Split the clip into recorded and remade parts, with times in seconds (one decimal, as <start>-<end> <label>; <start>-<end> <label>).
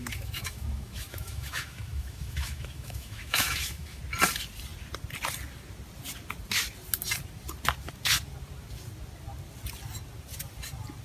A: 0.0-4.0 remade; 4.0-11.0 recorded